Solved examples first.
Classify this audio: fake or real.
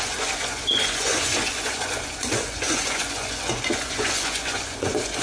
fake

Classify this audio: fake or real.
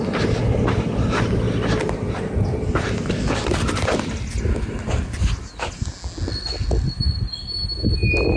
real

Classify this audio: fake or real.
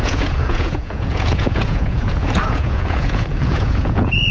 fake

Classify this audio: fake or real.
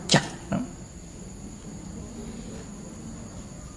real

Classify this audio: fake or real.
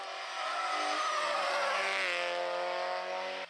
real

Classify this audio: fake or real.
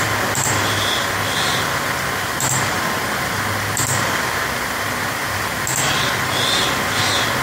real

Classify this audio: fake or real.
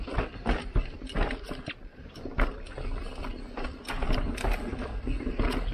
real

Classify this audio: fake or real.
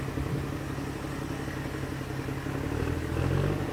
real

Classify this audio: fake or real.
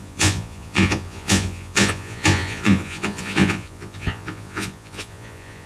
fake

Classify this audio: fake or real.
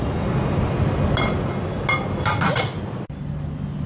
real